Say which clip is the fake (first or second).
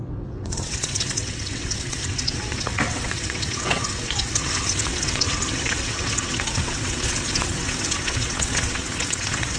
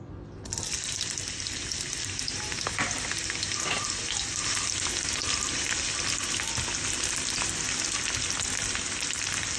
first